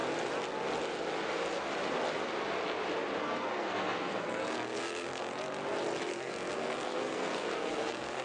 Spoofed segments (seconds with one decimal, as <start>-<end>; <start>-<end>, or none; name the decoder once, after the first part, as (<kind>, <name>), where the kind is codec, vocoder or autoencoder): 3.2-5.3 (codec, SNAC); 6.0-8.2